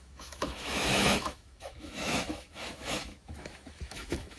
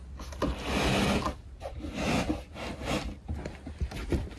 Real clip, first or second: second